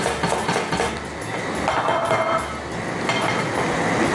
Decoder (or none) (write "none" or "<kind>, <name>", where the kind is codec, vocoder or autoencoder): none